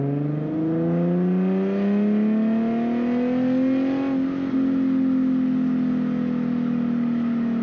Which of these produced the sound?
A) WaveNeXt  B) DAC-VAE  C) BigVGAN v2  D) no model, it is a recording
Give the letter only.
D